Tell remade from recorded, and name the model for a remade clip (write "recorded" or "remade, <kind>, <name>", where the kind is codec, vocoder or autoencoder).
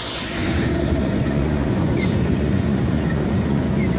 remade, vocoder, Vocos